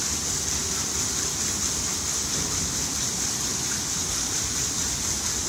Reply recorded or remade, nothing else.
recorded